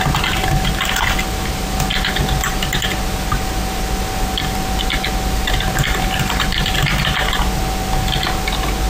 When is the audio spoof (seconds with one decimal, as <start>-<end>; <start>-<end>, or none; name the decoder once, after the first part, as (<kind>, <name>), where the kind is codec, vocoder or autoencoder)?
none

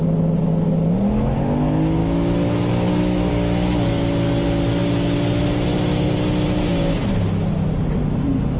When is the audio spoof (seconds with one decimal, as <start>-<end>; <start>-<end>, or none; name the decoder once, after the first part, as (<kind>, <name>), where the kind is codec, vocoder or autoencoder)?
2.0-3.3 (autoencoder, DAC-VAE)

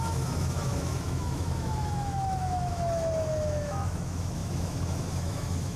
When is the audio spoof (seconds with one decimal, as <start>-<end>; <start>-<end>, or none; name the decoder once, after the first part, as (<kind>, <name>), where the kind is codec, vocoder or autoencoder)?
0.0-5.8 (autoencoder, DAC-VAE)

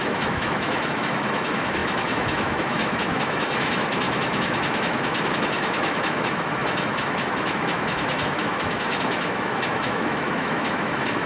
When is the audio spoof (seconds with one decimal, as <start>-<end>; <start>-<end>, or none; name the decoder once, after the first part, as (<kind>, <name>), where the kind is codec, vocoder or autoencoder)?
0.0-11.3 (autoencoder, DAC-VAE)

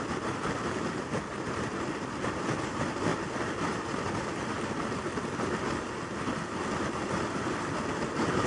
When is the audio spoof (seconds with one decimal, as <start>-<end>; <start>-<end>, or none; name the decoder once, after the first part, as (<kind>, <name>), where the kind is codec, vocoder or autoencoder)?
none

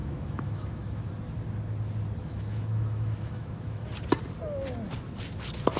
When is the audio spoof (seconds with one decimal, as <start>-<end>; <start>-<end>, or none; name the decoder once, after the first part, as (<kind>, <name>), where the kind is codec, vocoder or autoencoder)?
0.0-1.1 (autoencoder, DAC-VAE); 2.2-3.8

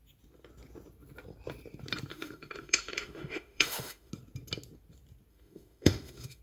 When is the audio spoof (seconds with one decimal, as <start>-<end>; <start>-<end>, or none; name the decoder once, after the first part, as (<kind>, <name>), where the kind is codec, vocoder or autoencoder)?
2.1-4.1 (autoencoder, DAC-VAE); 5.3-6.4

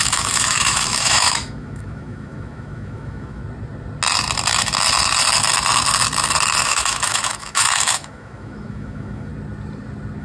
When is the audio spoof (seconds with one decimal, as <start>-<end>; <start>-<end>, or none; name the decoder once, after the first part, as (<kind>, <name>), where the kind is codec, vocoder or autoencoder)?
0.0-3.4 (autoencoder, DAC-VAE); 6.6-9.3